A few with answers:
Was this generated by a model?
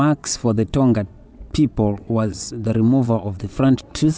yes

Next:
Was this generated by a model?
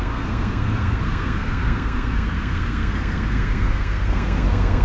yes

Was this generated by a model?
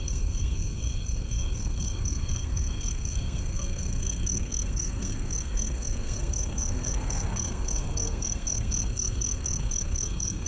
yes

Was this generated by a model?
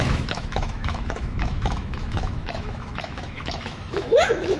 yes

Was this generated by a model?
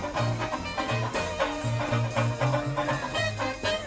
no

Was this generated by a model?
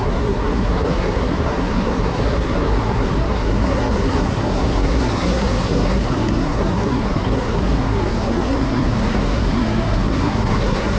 yes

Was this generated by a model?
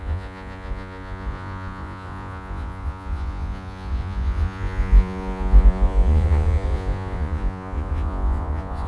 yes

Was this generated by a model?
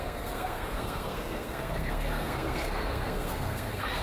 yes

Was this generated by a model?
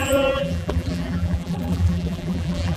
yes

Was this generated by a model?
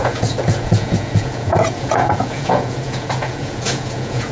yes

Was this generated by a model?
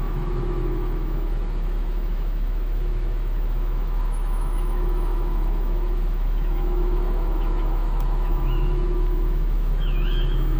yes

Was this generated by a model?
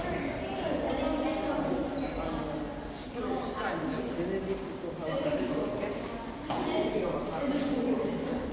no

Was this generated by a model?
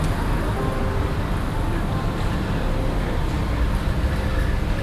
no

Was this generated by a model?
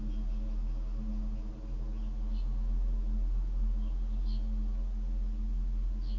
no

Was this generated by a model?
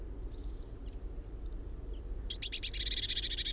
no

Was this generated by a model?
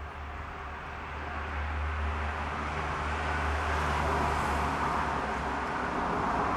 no